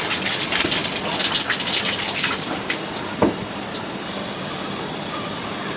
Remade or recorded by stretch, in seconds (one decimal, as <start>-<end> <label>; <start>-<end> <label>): 0.0-3.2 recorded; 3.2-4.2 remade; 4.2-5.8 recorded